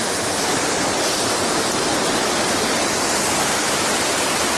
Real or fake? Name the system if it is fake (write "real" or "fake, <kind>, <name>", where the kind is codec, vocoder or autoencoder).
real